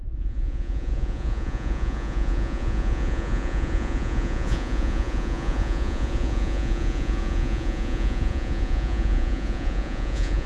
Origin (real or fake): fake